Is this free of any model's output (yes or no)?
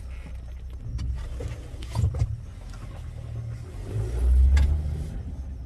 yes